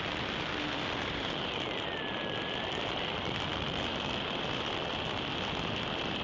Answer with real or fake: fake